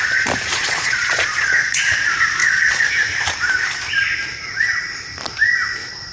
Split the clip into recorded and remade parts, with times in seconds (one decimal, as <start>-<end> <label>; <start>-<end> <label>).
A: 0.0-0.5 recorded; 0.5-1.8 remade; 1.8-2.4 recorded; 2.4-2.9 remade; 2.9-6.1 recorded